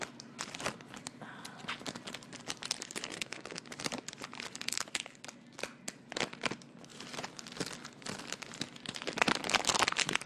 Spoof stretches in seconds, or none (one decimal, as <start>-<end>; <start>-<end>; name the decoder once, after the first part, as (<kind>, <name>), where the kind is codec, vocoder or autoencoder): 3.1-3.6 (codec, SNAC)